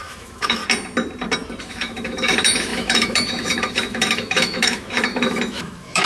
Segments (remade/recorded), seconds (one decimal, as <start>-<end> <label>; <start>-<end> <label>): 0.0-0.6 remade; 0.6-1.6 recorded; 1.6-6.1 remade

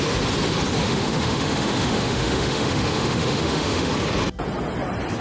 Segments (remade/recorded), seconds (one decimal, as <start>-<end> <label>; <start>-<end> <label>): 0.0-0.8 recorded; 0.8-3.9 remade; 3.9-5.2 recorded

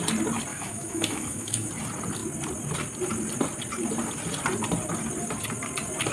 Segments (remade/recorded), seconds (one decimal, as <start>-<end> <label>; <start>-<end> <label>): 0.0-0.5 recorded; 0.5-1.7 remade; 1.7-6.1 recorded